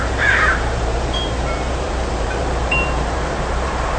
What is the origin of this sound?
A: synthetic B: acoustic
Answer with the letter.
A